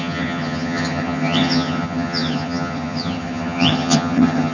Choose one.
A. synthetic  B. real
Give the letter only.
A